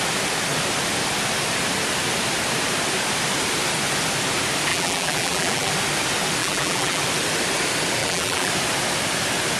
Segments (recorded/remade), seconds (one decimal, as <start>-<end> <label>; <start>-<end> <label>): 0.0-4.7 recorded; 4.7-5.7 remade; 5.7-6.4 recorded; 6.4-7.0 remade; 7.0-8.0 recorded; 8.0-8.5 remade; 8.5-9.6 recorded